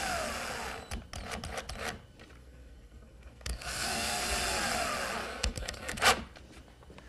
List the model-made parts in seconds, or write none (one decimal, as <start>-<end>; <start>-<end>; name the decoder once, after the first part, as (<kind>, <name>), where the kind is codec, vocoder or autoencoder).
2.4-4.2 (codec, SNAC); 5.2-6.0